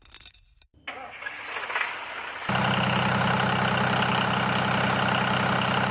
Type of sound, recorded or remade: recorded